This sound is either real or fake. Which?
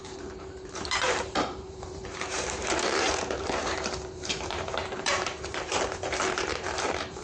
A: fake